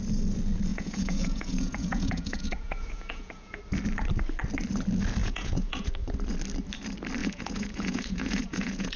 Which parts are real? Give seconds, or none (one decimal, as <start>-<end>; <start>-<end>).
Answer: 0.0-0.7; 3.6-5.2; 5.9-7.2